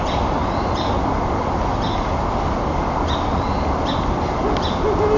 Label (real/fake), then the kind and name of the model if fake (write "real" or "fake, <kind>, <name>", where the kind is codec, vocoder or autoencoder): real